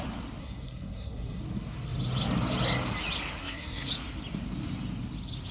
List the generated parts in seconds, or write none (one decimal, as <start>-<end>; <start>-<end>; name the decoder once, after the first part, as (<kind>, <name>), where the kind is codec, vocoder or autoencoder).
0.4-1.4 (codec, SNAC); 3.4-3.9